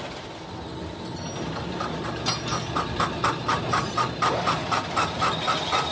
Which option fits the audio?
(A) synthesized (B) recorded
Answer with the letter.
B